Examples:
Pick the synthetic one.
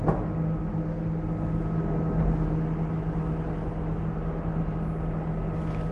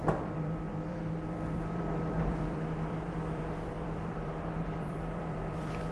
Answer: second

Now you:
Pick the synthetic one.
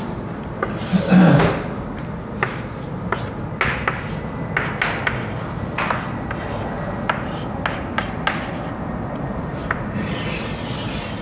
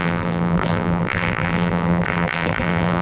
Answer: second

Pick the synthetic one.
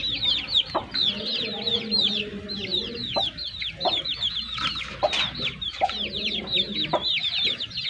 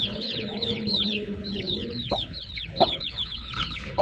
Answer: second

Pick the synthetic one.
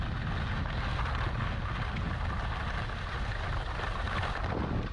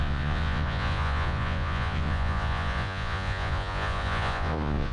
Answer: second